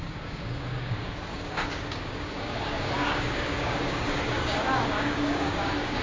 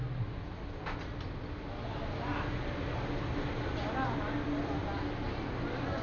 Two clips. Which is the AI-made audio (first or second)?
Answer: first